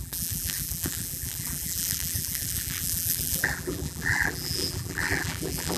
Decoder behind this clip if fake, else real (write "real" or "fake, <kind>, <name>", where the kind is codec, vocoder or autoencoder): fake, vocoder, BigVGAN v2